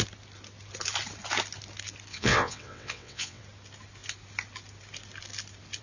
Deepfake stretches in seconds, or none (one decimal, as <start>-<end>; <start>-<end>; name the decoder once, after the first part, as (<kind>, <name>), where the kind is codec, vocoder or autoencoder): 2.1-3.4 (vocoder, WaveNeXt)